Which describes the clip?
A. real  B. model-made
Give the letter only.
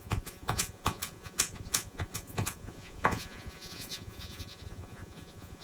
B